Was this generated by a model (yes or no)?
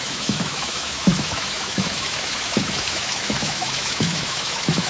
yes